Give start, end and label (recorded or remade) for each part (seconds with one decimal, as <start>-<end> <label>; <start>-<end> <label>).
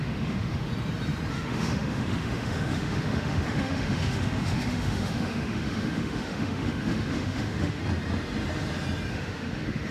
0.0-0.7 remade; 0.7-1.3 recorded; 1.3-7.8 remade; 7.8-9.1 recorded; 9.1-9.9 remade